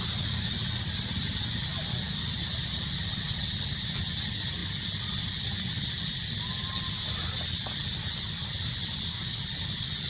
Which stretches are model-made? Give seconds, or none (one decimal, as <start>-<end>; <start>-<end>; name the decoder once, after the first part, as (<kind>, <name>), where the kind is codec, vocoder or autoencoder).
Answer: none